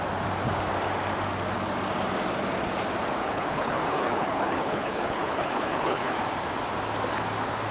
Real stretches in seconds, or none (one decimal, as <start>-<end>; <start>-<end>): 0.0-3.2; 6.2-7.7